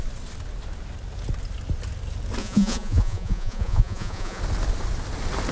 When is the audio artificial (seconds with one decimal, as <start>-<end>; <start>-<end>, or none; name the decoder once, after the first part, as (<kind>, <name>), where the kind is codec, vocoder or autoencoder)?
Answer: 2.4-4.4 (vocoder, Vocos)